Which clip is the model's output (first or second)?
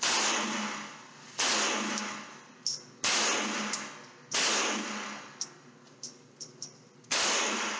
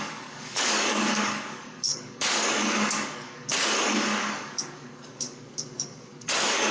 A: second